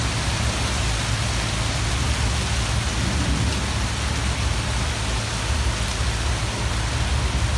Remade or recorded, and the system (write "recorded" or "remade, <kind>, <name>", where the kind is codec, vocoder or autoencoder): recorded